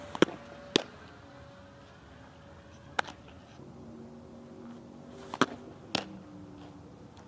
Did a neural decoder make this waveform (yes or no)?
no